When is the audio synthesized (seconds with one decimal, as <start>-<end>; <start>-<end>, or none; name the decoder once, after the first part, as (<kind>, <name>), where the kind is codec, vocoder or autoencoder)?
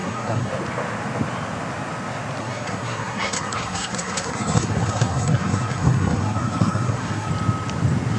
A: 0.0-0.5 (codec, SNAC); 2.4-7.3